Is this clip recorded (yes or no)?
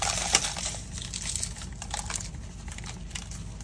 yes